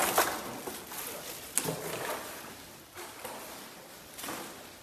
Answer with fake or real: real